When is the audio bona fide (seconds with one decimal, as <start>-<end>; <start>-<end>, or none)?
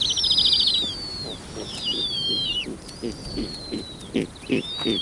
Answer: 0.0-1.1; 4.1-5.0